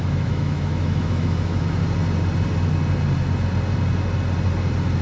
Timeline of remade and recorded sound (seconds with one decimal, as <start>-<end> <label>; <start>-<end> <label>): 0.0-1.8 remade; 1.8-5.0 recorded

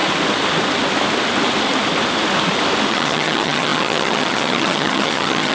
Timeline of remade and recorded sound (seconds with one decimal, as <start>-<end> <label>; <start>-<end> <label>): 0.0-2.9 recorded; 2.9-5.5 remade

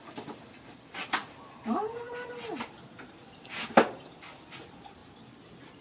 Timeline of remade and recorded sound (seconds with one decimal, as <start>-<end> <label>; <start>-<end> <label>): 0.0-5.8 recorded